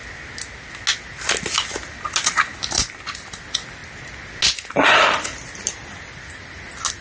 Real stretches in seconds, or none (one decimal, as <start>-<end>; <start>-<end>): 0.0-7.0